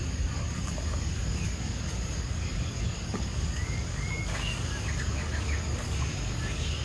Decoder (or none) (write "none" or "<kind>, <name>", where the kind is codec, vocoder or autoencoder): codec, DAC